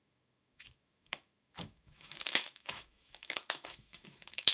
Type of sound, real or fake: fake